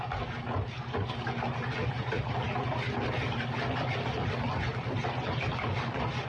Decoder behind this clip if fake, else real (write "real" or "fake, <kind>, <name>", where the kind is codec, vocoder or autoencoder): real